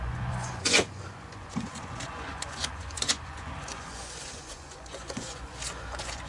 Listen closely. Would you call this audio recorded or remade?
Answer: remade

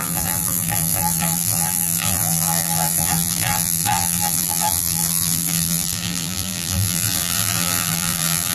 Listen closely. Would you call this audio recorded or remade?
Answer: remade